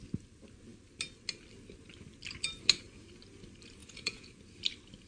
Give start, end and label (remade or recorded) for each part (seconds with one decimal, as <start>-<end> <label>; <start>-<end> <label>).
0.0-3.8 recorded; 3.8-4.4 remade; 4.4-5.1 recorded